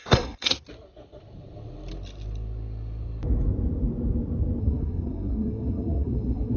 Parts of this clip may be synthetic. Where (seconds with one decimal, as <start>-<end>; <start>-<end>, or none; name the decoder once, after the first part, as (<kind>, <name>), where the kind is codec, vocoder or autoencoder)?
0.0-0.6 (codec, SNAC); 4.6-6.6